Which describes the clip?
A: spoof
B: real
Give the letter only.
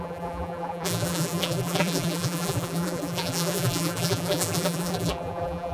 A